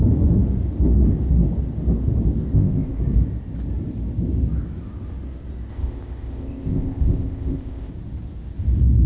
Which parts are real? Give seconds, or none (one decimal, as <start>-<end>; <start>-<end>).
0.0-2.5; 3.0-5.7; 7.9-9.1